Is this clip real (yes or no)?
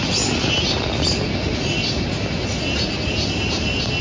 yes